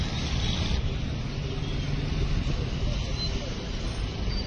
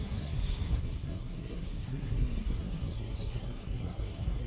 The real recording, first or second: first